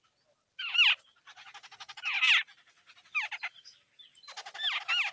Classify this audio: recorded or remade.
recorded